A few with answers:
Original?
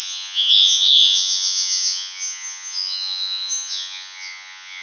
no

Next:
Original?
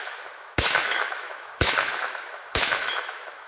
no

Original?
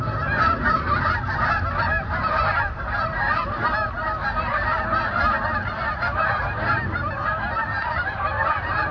no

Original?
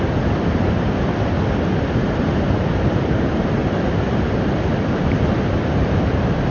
yes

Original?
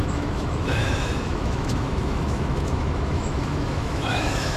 no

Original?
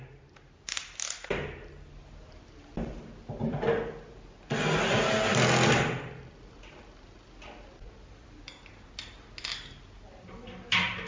yes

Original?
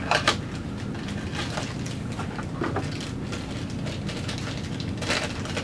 yes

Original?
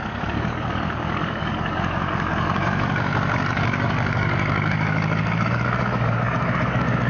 no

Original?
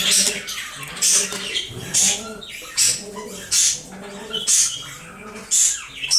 yes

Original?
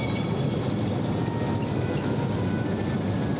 yes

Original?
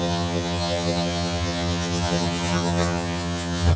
no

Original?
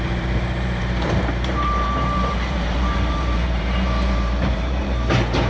no